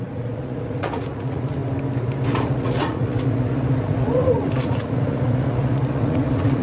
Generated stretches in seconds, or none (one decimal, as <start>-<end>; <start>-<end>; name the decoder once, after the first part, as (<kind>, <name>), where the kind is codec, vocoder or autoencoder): 0.0-1.6 (vocoder, Vocos); 2.3-6.6